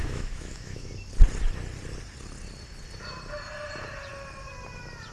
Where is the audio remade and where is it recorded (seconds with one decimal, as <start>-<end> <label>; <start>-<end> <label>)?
0.0-0.9 remade; 0.9-5.1 recorded